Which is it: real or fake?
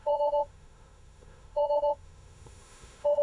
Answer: fake